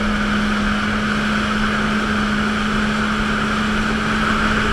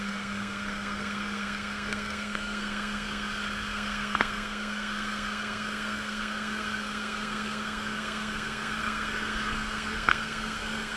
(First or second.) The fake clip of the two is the second